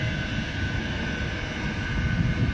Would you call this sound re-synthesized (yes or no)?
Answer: no